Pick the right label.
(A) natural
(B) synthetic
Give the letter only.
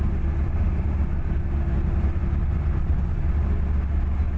A